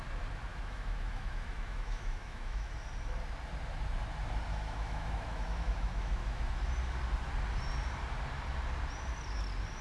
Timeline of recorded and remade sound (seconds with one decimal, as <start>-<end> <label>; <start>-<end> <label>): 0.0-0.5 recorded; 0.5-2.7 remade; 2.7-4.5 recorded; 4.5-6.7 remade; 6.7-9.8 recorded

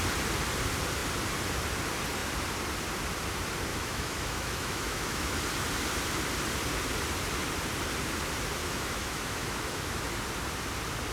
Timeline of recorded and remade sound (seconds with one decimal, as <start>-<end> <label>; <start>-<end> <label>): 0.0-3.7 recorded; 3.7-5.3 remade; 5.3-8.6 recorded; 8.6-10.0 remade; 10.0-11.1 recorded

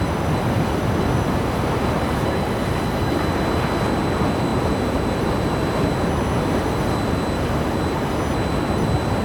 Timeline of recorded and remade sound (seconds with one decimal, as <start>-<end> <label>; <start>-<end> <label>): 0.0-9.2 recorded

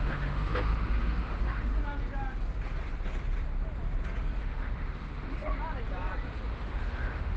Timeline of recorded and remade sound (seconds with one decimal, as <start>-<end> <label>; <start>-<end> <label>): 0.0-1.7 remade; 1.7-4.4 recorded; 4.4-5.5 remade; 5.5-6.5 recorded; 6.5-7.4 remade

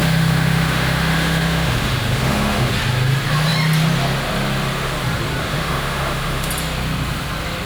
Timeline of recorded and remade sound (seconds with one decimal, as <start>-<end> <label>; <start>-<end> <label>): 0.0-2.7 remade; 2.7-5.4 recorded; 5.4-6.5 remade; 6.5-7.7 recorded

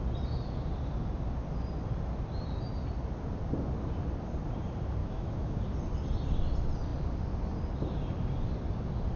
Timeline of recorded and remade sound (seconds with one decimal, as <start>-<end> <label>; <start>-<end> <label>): 0.0-5.0 recorded; 5.0-5.6 remade; 5.6-9.2 recorded

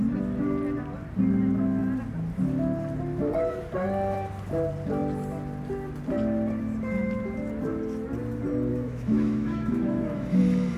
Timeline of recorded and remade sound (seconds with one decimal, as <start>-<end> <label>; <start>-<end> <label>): 0.0-8.7 recorded; 8.7-10.4 remade; 10.4-10.8 recorded

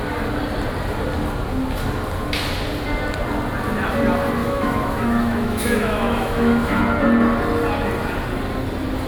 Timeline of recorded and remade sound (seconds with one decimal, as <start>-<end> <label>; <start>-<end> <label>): 0.0-4.4 recorded; 4.4-6.8 remade; 6.8-9.1 recorded